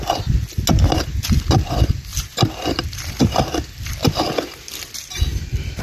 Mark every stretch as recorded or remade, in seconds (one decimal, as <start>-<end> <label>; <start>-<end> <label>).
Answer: 0.0-5.8 recorded